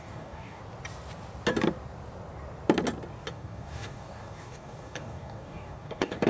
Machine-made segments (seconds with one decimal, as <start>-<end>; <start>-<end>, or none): 0.0-0.6; 3.3-6.3

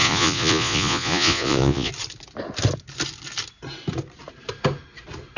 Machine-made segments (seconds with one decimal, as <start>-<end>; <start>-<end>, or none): 0.0-1.9

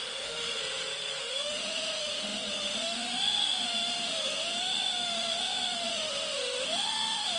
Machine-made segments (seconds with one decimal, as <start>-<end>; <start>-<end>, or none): 0.0-0.6; 1.2-7.4

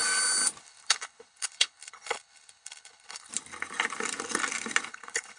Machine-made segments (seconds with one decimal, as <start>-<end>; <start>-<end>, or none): 0.6-3.3; 4.9-5.4